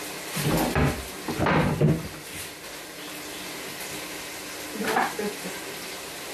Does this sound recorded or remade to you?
recorded